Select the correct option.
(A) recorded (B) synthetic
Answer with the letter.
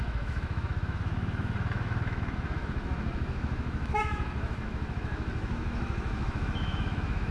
B